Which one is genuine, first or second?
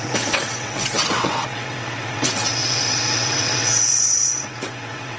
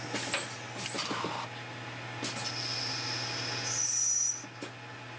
second